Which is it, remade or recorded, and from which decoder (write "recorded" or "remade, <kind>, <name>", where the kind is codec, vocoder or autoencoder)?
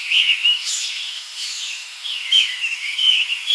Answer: remade, autoencoder, DAC-VAE